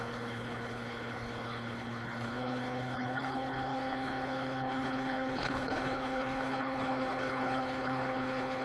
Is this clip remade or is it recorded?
remade